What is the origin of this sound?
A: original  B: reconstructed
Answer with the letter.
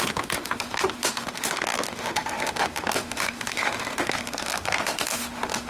B